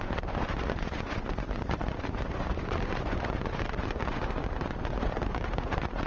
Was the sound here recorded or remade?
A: remade